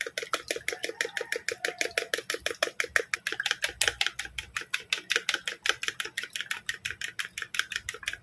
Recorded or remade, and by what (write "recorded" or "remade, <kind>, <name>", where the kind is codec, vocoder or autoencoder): recorded